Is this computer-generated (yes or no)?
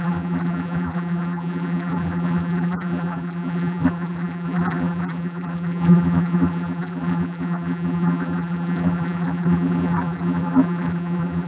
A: yes